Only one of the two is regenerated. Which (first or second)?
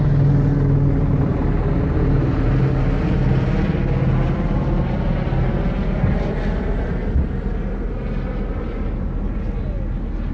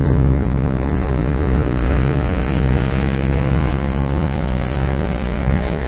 second